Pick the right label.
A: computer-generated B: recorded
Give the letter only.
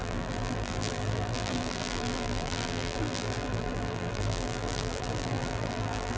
A